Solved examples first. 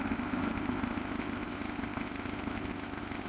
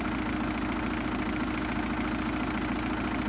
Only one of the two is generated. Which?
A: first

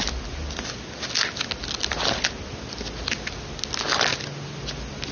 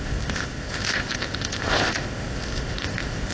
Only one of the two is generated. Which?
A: second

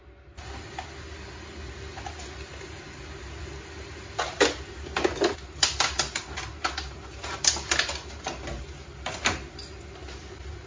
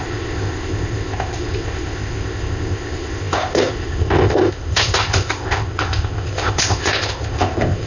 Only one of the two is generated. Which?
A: second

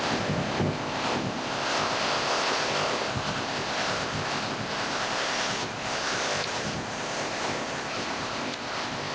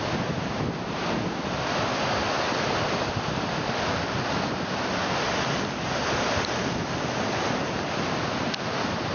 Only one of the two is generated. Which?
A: first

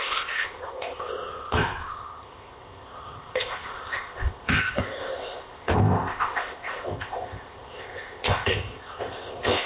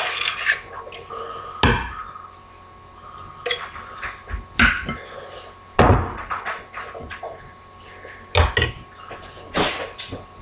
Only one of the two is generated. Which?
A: first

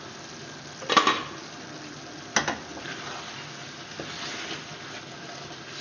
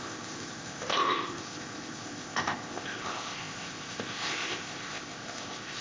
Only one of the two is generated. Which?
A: second